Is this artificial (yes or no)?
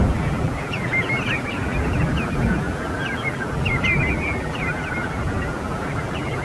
yes